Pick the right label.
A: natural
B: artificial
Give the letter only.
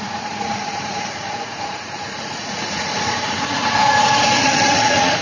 B